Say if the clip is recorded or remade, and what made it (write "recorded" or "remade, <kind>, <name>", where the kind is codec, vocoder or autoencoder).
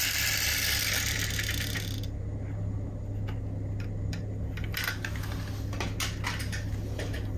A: recorded